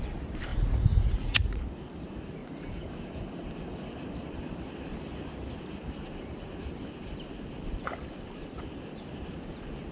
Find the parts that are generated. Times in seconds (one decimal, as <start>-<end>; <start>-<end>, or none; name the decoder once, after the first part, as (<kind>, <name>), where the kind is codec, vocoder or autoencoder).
0.5-1.6 (vocoder, Vocos); 2.4-2.9